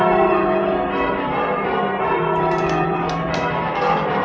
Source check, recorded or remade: remade